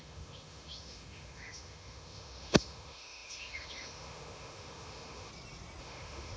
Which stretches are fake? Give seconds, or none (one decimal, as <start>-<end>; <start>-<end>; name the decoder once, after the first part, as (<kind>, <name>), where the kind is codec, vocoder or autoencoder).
0.0-5.3 (autoencoder, DAC-VAE); 5.8-6.4